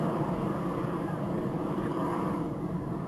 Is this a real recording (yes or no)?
no